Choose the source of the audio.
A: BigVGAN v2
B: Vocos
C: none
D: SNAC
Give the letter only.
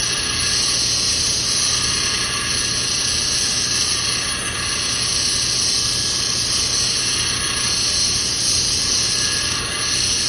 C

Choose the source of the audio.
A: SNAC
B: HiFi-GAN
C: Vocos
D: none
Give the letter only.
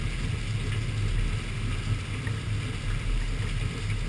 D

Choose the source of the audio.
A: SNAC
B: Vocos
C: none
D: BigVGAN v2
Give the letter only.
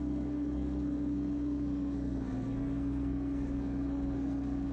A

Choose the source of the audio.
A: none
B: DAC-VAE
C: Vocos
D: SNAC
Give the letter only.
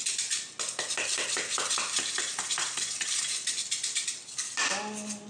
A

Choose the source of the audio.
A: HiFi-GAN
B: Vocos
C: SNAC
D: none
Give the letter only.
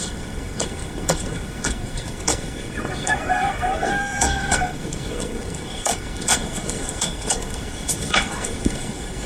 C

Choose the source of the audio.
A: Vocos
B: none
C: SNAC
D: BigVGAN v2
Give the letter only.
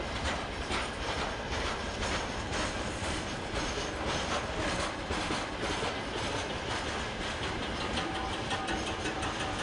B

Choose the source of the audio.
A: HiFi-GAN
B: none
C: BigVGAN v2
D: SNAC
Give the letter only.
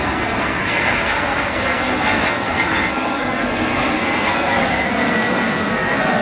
D